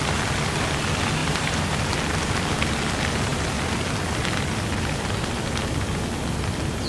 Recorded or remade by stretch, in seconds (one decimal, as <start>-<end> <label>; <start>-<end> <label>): 0.0-1.2 recorded; 1.2-1.8 remade; 1.8-6.9 recorded